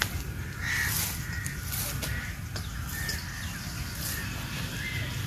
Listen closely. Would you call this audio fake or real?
real